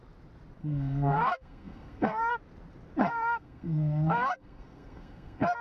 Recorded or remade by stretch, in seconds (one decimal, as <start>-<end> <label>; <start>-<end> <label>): 0.0-0.6 recorded; 0.6-2.3 remade; 2.3-3.0 recorded; 3.0-5.6 remade